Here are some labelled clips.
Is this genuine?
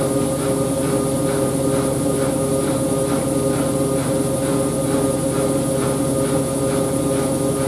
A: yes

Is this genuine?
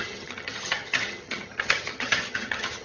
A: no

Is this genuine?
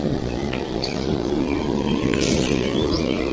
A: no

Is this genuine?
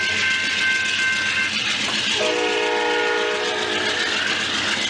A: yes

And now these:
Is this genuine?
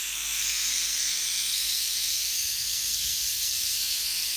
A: no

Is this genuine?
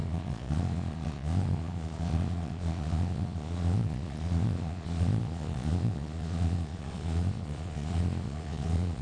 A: no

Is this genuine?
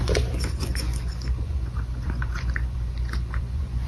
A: no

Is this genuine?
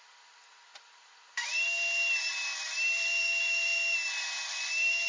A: no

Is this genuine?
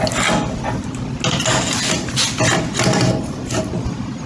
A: yes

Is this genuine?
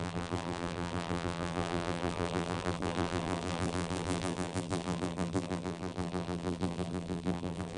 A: no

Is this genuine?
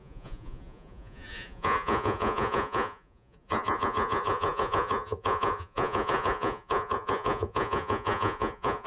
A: no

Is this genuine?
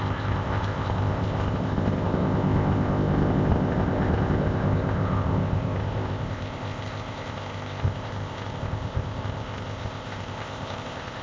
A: no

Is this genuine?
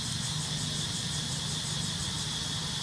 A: no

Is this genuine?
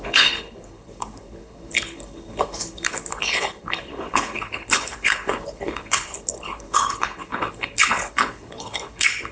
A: no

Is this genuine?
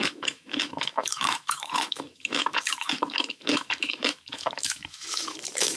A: no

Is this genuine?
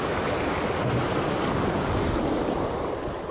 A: yes